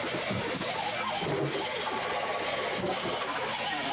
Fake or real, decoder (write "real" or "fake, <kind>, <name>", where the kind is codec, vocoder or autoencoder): real